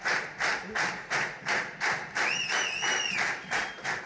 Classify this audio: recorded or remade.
recorded